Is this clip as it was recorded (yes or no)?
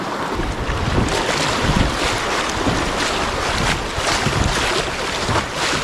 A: yes